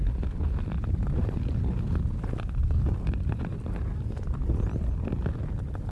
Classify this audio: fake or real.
real